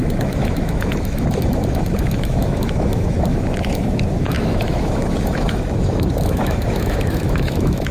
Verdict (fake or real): fake